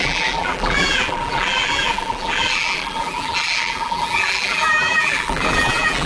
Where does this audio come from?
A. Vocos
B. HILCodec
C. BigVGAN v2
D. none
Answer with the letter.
C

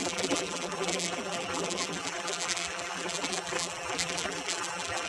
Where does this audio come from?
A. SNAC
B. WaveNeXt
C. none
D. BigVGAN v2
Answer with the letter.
D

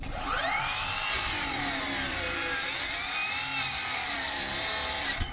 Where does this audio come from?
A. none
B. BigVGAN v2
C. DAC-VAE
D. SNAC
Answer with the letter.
B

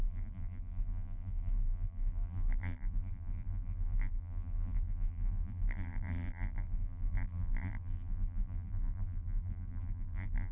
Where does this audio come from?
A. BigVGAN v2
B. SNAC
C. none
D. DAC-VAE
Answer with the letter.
A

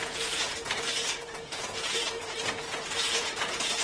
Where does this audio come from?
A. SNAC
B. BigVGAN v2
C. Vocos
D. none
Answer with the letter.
C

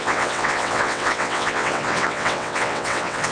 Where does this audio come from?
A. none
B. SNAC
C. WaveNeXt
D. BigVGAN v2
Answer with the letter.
C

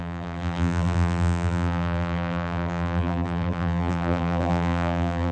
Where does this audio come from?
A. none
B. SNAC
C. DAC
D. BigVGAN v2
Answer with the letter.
D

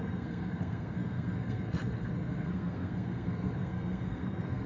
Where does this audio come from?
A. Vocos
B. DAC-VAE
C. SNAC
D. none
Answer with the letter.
C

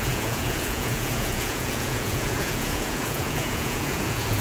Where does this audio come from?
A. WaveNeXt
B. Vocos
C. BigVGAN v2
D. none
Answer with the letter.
B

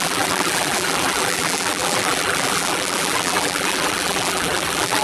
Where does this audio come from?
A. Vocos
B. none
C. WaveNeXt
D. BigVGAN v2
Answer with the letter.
D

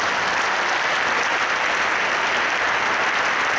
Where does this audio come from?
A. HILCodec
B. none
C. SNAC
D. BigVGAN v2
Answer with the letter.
B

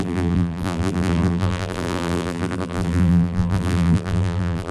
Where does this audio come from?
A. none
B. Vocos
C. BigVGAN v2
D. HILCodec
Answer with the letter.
C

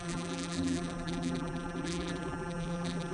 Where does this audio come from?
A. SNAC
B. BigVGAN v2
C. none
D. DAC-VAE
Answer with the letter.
B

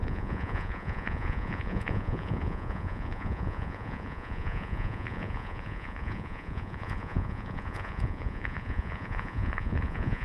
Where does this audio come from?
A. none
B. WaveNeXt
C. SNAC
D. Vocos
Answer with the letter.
D